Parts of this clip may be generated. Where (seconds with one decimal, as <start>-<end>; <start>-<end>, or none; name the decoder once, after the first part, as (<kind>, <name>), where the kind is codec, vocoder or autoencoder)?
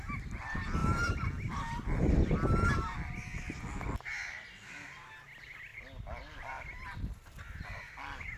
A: 0.8-2.1 (vocoder, BigVGAN v2)